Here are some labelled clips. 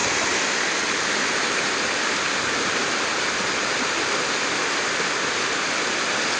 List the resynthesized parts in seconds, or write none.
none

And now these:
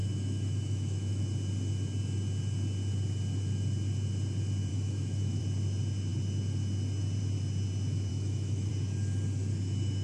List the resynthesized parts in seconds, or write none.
0.0-1.2 (autoencoder, DAC-VAE); 4.7-5.4; 8.1-8.7

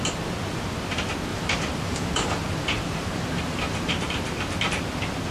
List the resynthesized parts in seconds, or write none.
1.3-3.9 (vocoder, BigVGAN v2)